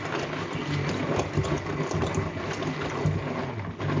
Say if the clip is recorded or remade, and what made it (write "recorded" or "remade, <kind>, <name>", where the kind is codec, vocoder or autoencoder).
recorded